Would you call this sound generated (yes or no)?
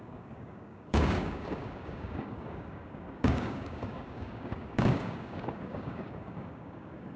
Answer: yes